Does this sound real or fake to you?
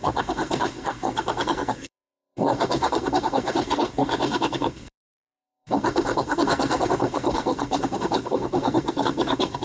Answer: fake